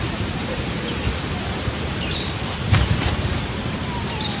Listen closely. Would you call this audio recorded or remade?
remade